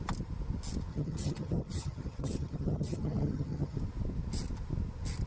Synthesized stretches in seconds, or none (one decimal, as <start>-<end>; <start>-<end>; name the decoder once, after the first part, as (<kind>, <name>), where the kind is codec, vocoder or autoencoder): 0.9-3.8 (vocoder, HiFi-GAN)